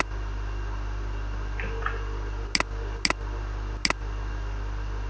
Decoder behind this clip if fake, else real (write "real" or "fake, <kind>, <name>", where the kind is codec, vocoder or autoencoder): real